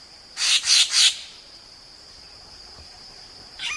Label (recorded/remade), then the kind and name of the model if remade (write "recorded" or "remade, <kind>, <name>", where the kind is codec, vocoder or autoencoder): remade, vocoder, BigVGAN v2